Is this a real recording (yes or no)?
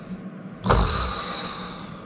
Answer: yes